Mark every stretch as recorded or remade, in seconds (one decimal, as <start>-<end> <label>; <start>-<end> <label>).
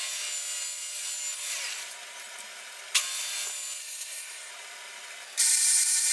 0.0-3.8 recorded; 3.8-4.5 remade; 4.5-6.1 recorded